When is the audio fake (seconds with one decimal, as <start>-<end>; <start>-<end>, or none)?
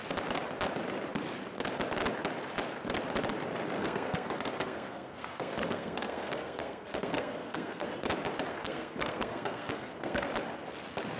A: 3.8-7.9; 8.5-10.3